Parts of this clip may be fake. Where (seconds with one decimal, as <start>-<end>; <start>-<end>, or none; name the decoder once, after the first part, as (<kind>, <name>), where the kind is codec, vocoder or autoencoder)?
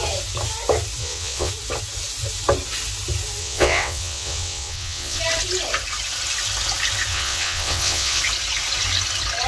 1.0-1.5 (vocoder, WaveNeXt); 3.4-5.2; 7.1-8.2